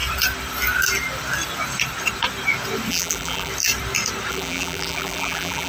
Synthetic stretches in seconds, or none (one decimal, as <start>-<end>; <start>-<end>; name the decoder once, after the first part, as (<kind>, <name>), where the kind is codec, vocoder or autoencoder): 2.9-3.5 (vocoder, BigVGAN v2); 4.3-5.7